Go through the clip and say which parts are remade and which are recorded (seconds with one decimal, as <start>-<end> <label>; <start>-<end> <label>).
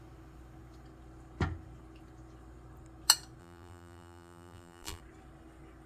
0.0-3.4 recorded; 3.4-5.0 remade; 5.0-5.9 recorded